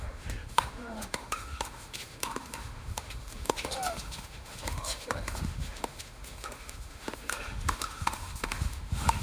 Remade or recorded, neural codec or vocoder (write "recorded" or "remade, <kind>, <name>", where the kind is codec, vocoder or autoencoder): remade, autoencoder, DAC-VAE